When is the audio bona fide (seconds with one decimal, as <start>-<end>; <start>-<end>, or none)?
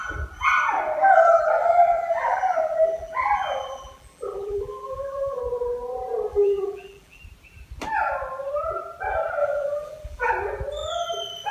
0.0-1.6; 5.4-6.3; 7.2-9.4; 10.3-11.5